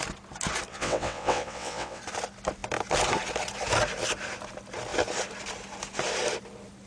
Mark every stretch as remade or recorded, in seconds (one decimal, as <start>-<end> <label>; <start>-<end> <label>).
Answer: 0.0-0.7 recorded; 0.7-2.0 remade; 2.0-6.9 recorded